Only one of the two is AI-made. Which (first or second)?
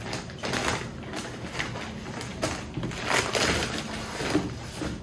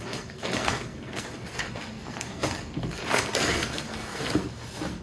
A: second